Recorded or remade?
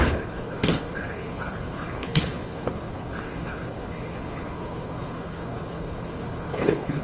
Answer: remade